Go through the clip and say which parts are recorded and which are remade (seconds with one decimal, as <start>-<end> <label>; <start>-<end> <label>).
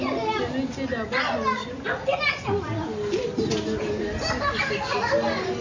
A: 0.0-5.6 recorded